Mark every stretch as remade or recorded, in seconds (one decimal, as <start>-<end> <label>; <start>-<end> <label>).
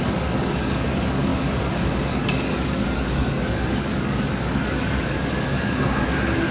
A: 0.0-6.5 remade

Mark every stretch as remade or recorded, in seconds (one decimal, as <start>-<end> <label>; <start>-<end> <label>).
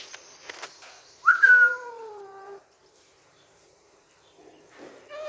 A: 0.0-1.3 recorded; 1.3-4.1 remade; 4.1-5.3 recorded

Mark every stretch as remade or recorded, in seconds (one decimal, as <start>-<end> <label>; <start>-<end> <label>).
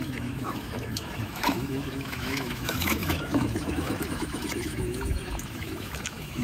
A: 0.0-6.4 remade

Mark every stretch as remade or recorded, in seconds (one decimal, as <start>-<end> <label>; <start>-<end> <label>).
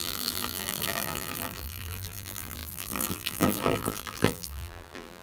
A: 0.0-5.2 remade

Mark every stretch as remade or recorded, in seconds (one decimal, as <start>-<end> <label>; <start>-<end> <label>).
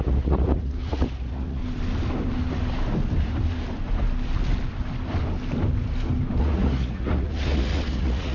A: 0.0-1.6 remade; 1.6-6.4 recorded; 6.4-8.3 remade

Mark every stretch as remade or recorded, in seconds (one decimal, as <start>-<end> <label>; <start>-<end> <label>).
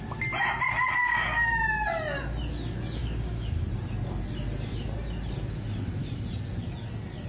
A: 0.0-1.0 recorded; 1.0-1.6 remade; 1.6-3.0 recorded; 3.0-3.6 remade; 3.6-7.3 recorded